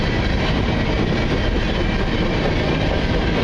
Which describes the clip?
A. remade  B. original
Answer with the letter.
B